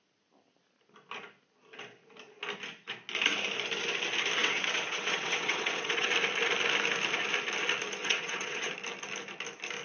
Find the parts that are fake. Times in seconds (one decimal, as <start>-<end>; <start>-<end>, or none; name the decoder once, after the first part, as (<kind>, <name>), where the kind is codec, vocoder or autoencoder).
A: 4.4-6.1 (vocoder, WaveNeXt); 8.0-8.7